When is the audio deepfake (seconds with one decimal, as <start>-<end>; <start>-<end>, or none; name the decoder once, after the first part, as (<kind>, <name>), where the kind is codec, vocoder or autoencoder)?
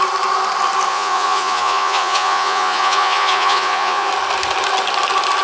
0.9-4.1 (vocoder, Vocos)